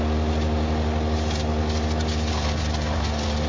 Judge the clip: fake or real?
real